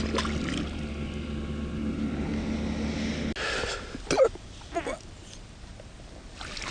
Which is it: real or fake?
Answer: real